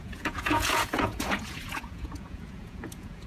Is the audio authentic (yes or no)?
no